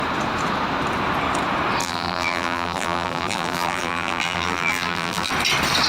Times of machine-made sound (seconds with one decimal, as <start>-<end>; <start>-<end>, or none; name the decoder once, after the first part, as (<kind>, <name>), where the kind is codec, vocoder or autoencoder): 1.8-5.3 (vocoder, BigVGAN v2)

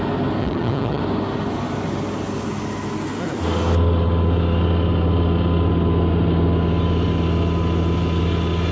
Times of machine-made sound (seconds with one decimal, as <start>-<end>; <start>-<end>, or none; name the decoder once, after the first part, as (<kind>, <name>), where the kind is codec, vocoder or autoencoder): 0.4-1.0 (vocoder, HiFi-GAN)

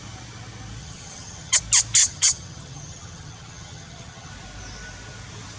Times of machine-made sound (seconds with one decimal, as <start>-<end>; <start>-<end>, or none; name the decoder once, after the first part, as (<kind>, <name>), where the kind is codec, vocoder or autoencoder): 0.8-1.6 (vocoder, HiFi-GAN); 2.0-4.3

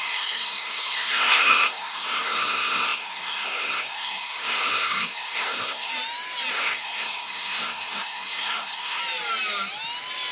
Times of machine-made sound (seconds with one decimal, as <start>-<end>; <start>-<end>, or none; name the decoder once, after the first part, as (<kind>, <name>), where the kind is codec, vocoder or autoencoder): 0.0-5.9 (codec, SNAC); 6.5-9.0